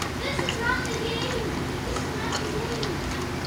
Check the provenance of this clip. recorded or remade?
recorded